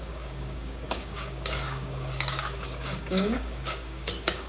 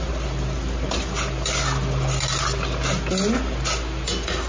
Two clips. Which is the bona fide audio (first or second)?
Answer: second